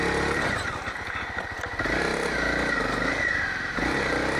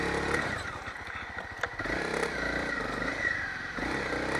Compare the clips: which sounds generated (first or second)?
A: second